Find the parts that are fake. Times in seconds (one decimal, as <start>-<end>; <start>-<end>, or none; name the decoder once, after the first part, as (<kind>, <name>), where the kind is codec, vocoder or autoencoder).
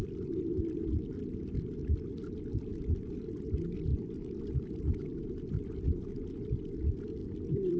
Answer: 3.9-4.7 (vocoder, BigVGAN v2); 7.2-7.8